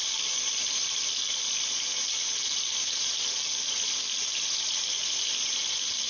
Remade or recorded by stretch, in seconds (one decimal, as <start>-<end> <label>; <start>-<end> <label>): 0.0-6.1 recorded

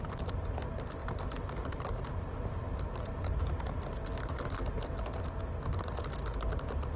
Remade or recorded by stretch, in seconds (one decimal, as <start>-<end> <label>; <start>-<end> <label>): 0.0-7.0 recorded